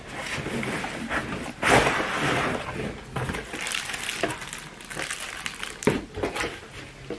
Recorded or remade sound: recorded